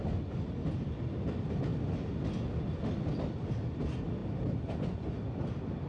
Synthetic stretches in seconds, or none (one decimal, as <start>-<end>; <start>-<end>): none